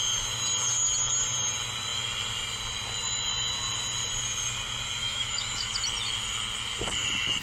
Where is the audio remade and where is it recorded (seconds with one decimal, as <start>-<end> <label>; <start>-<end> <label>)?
0.0-5.0 recorded; 5.0-5.7 remade; 5.7-7.4 recorded